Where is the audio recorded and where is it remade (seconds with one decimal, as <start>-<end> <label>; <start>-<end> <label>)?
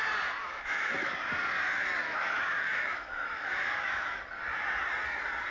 0.0-0.4 recorded; 0.4-1.1 remade; 1.1-2.0 recorded; 2.0-4.1 remade; 4.1-5.5 recorded